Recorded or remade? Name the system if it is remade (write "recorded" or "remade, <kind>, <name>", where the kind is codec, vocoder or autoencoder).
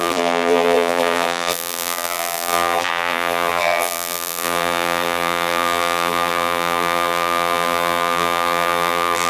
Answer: remade, vocoder, BigVGAN v2